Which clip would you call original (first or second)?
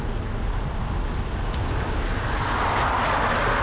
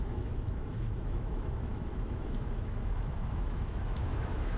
first